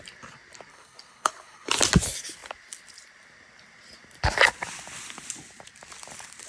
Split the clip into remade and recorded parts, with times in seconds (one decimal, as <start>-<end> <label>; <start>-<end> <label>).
0.0-0.7 recorded; 0.7-1.7 remade; 1.7-6.5 recorded